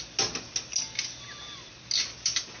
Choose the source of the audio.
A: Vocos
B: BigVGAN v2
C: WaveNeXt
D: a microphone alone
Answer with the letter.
D